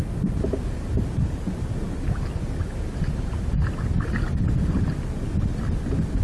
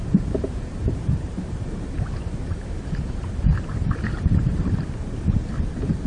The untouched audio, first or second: first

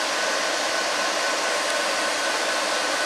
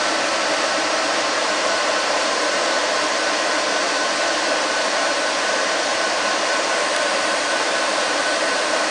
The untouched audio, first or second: first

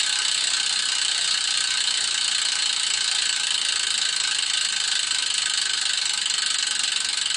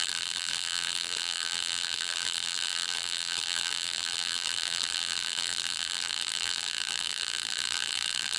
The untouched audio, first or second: first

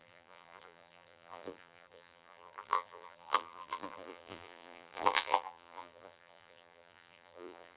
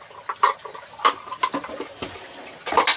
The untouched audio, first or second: second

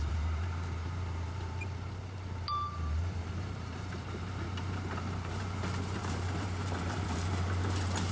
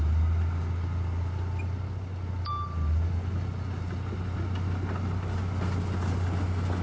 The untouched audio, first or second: second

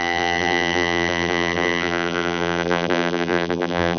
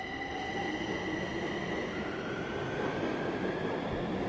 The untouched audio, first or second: second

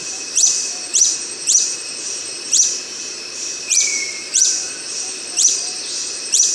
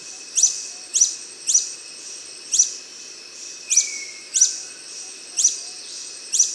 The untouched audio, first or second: second